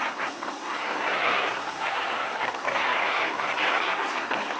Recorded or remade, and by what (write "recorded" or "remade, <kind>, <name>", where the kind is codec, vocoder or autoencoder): remade, codec, SNAC